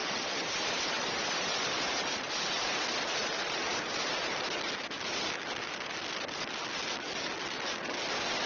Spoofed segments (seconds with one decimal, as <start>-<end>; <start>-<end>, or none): 0.0-2.8; 3.2-4.3